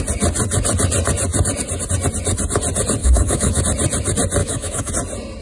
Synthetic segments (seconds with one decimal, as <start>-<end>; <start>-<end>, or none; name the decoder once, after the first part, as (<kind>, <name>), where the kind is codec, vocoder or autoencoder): 3.0-3.6 (autoencoder, DAC-VAE); 4.4-4.9